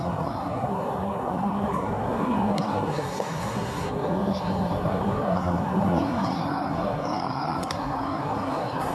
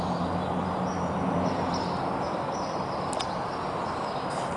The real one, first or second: second